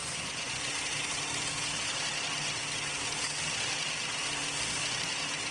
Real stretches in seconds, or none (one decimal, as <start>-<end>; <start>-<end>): 0.7-5.5